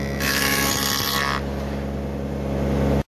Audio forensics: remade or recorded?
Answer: recorded